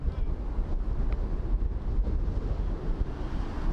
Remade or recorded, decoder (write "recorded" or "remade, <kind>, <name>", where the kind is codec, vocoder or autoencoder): recorded